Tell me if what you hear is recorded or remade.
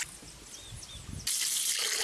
recorded